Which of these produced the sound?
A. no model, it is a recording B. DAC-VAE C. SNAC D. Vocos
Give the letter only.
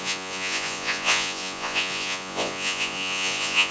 D